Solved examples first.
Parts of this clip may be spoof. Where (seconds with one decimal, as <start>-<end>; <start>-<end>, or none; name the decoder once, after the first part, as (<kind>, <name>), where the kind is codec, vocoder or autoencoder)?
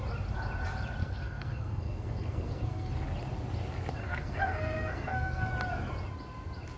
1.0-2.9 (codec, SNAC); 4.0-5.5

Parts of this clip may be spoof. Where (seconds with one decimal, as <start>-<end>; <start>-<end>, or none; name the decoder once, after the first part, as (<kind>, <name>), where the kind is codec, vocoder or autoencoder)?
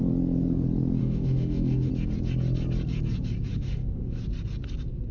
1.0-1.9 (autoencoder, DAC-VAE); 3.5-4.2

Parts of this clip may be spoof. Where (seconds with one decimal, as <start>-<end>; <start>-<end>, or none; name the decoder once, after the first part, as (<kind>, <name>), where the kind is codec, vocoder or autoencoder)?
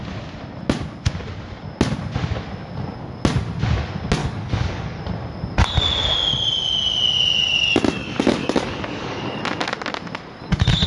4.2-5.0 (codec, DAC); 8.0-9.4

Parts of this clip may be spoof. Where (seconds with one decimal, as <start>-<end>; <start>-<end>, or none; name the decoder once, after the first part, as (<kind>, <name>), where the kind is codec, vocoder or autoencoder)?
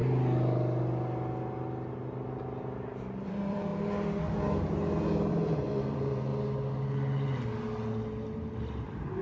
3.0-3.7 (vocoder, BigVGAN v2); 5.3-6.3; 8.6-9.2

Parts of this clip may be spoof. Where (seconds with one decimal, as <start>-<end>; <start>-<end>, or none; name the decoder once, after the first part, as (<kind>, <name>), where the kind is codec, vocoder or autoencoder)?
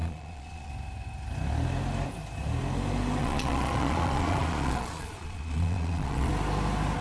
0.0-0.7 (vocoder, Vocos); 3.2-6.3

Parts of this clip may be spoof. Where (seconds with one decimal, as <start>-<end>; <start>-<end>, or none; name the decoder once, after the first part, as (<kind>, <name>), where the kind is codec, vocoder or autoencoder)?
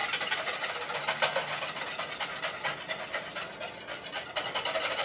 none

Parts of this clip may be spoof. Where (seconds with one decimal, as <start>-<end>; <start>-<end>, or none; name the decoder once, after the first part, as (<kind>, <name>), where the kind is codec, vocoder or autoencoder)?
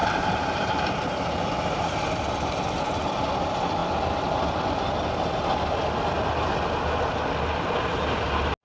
0.0-0.7 (vocoder, BigVGAN v2)